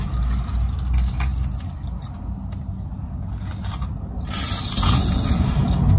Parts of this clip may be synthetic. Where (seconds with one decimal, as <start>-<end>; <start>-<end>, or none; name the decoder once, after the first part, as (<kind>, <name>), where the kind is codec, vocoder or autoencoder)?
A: none